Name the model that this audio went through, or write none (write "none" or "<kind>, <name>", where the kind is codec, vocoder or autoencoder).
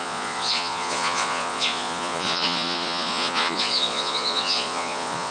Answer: vocoder, Vocos